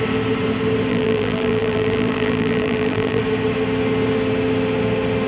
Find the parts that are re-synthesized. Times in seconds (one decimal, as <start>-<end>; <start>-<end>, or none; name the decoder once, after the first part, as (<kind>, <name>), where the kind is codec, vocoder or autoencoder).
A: 0.9-3.2 (vocoder, BigVGAN v2)